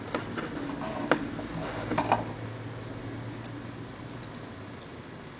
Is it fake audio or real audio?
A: real